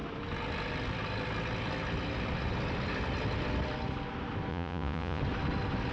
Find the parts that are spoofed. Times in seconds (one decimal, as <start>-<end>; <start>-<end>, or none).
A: 4.5-5.2